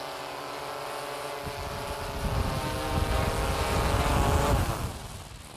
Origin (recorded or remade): recorded